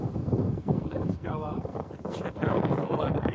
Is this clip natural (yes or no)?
no